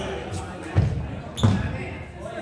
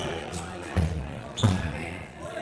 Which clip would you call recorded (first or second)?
first